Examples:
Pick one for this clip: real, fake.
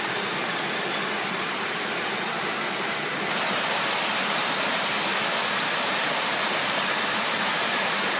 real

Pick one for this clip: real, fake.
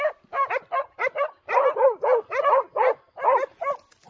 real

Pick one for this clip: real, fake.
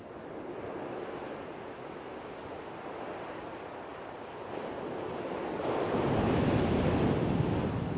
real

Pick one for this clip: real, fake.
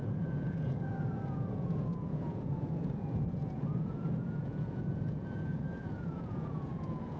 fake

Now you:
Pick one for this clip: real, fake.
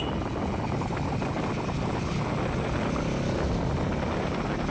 real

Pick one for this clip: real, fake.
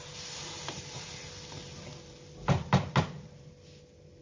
real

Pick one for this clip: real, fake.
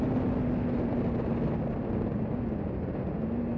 real